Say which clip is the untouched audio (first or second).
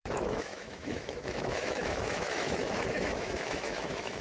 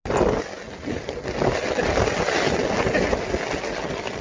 second